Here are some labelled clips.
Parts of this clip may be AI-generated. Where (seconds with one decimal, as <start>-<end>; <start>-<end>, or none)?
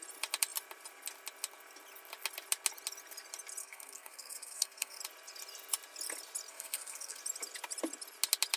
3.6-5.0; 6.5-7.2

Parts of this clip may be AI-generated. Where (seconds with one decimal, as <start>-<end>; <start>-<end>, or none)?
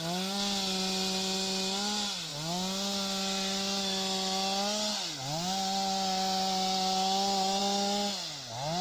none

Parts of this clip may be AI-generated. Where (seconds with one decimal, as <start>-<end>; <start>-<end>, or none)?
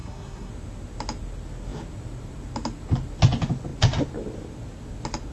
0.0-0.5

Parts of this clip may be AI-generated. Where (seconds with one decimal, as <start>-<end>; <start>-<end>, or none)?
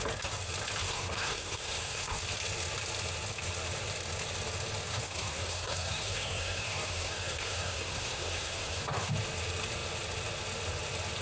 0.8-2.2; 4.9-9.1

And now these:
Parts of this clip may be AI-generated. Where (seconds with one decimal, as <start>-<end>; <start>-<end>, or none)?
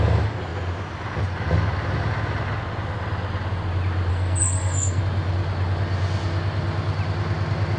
4.1-5.0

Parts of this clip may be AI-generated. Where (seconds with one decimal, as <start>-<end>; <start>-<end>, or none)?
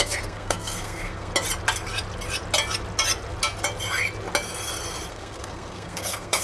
0.0-1.3; 5.1-6.4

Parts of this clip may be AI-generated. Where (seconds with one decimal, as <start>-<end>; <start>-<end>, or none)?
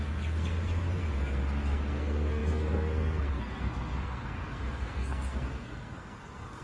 0.0-6.6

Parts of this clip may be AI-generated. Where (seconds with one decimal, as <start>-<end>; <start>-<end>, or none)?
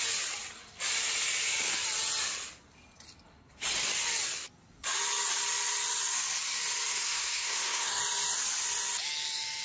6.9-8.0